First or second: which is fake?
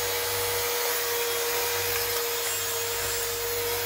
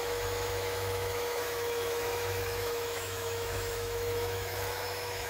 second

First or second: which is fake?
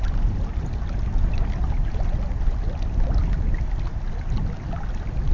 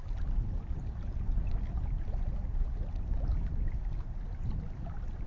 second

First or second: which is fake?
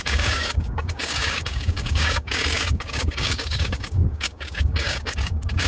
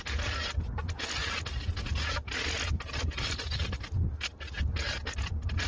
first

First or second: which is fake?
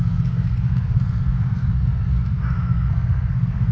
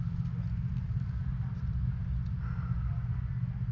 first